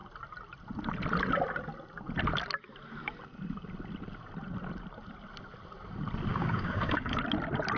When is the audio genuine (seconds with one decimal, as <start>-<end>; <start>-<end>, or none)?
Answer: 0.0-6.3; 7.2-7.8

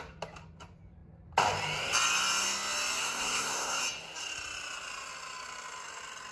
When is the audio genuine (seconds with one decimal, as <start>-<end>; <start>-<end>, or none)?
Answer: 0.0-3.0; 3.8-6.3

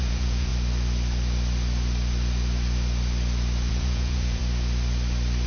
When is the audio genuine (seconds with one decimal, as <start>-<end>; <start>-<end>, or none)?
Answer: 0.5-3.7; 4.4-5.5